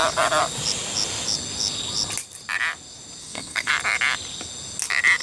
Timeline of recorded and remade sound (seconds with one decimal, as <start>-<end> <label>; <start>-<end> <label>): 0.0-3.2 recorded; 3.2-3.7 remade; 3.7-5.2 recorded